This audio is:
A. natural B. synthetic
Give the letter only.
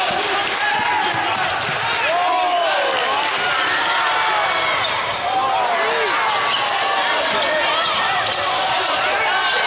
A